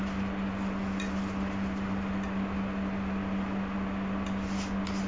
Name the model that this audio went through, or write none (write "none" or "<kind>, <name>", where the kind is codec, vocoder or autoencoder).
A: none